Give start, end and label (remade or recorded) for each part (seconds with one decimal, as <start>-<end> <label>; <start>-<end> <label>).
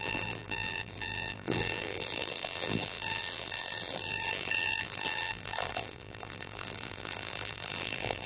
0.0-8.3 remade